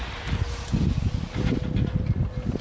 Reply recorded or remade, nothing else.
recorded